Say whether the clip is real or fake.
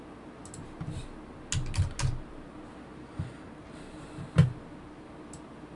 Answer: real